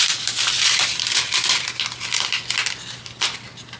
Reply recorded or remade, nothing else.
recorded